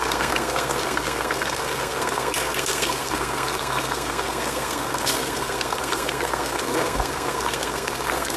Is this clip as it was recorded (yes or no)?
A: no